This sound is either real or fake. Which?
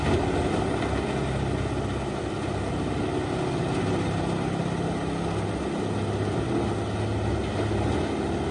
real